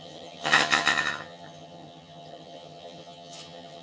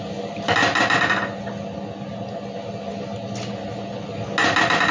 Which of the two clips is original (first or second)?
second